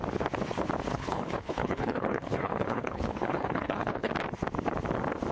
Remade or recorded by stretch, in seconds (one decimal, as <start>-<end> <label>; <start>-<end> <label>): 0.0-0.9 recorded; 0.9-4.1 remade; 4.1-5.3 recorded